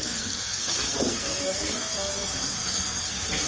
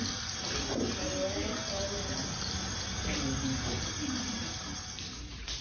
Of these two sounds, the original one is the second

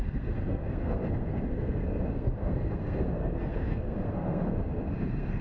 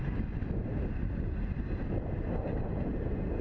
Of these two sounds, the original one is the second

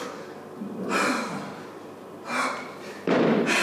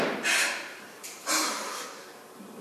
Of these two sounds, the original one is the first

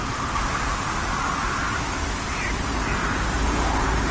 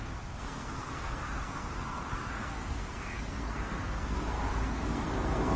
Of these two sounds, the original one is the first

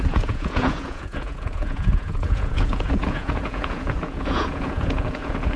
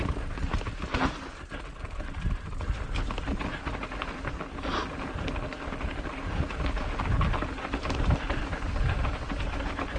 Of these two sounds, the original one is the second